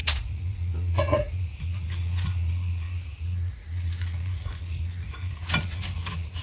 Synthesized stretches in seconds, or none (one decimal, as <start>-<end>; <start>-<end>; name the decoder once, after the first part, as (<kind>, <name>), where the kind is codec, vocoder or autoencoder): 0.0-6.4 (vocoder, Vocos)

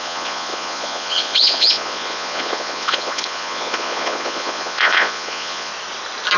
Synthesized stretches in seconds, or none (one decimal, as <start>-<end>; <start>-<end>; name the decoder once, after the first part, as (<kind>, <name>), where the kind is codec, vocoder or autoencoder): 0.0-5.7 (vocoder, Vocos)

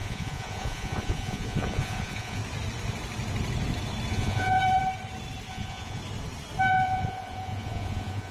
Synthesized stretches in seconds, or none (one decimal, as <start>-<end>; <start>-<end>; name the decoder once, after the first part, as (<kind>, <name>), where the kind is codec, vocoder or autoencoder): 0.0-2.4 (vocoder, Vocos); 4.1-4.6; 5.5-6.0; 6.7-8.3

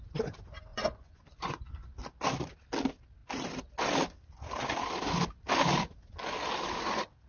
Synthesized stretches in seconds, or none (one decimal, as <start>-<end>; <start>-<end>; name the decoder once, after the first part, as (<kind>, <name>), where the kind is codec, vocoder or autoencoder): 0.7-1.9 (vocoder, Vocos)